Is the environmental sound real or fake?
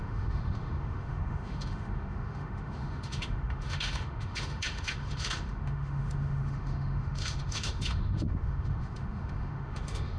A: fake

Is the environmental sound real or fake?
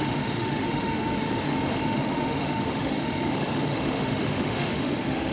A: fake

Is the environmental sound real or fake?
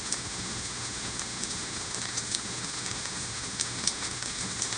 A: fake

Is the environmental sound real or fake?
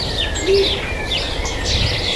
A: real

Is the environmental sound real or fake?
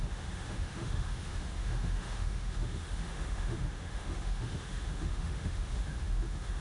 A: fake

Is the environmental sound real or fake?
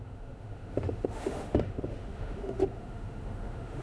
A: fake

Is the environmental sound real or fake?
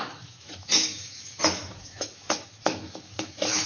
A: fake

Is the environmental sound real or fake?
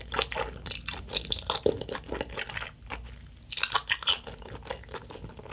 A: real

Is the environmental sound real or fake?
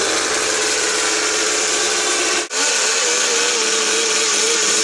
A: real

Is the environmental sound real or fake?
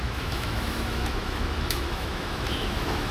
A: fake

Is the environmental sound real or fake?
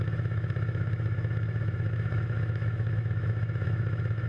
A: fake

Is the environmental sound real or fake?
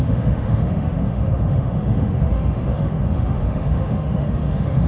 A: fake